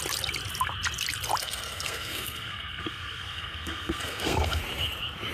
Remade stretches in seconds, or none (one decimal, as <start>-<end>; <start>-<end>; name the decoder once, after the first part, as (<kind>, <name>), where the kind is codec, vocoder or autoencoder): 1.4-4.6 (codec, SNAC)

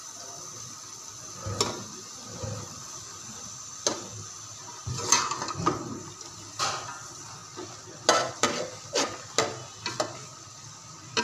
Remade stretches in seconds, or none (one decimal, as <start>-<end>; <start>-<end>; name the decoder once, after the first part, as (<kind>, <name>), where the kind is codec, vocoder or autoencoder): none

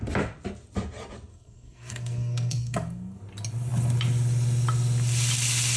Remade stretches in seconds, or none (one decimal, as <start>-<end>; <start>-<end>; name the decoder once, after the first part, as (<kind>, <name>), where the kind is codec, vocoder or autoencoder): 1.3-3.2 (codec, SNAC)